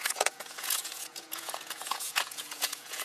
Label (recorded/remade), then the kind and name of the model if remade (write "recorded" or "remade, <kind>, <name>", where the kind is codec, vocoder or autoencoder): remade, vocoder, Vocos